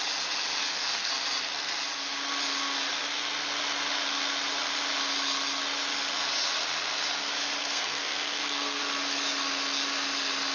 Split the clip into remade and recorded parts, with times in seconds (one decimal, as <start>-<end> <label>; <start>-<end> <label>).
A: 0.0-0.6 recorded; 0.6-1.1 remade; 1.1-7.6 recorded; 7.6-8.8 remade; 8.8-10.5 recorded